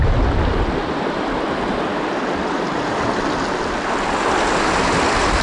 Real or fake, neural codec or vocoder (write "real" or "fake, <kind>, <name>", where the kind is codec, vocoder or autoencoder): real